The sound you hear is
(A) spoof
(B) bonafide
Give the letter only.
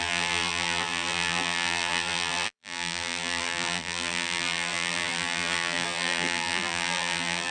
A